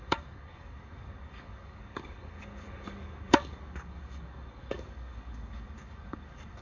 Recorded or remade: remade